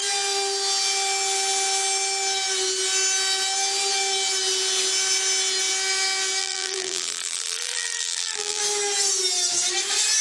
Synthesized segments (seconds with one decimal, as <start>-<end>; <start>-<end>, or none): 6.4-8.6